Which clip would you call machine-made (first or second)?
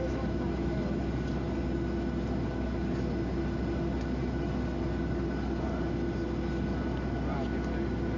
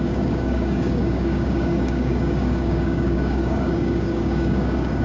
second